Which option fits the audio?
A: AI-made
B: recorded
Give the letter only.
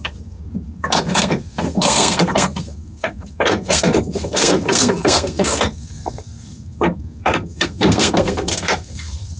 A